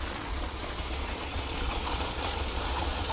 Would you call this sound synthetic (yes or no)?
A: yes